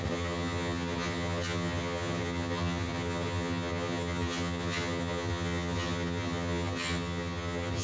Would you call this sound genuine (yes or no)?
no